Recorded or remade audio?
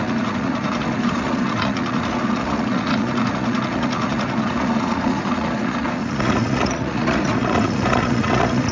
remade